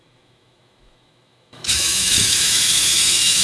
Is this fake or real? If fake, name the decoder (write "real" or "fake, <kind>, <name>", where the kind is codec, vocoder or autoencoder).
fake, autoencoder, DAC-VAE